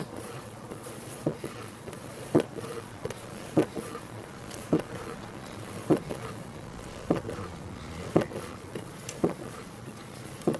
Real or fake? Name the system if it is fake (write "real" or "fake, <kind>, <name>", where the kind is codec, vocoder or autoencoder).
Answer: fake, vocoder, Vocos